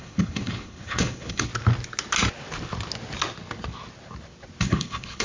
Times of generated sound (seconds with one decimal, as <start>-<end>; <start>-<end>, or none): 0.0-1.5; 4.6-5.2